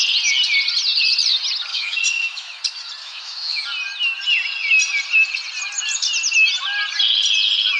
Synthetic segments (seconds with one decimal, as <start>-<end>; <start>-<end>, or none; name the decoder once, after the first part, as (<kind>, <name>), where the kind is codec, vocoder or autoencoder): 1.7-2.6 (autoencoder, DAC-VAE); 3.0-3.6